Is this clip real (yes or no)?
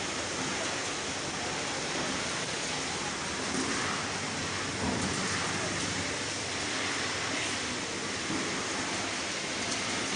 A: yes